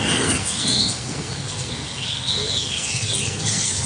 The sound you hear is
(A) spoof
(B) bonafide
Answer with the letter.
A